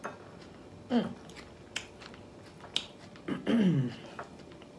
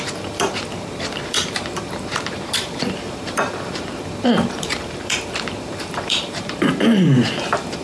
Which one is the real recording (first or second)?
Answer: first